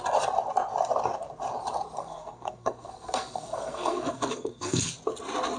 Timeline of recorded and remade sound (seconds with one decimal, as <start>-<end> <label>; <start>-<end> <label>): 0.0-2.0 recorded; 2.0-4.9 remade; 4.9-5.6 recorded